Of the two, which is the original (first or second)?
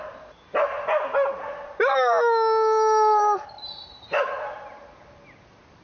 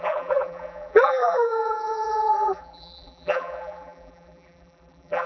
first